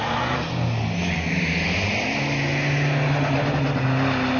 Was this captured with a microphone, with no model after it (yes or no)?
yes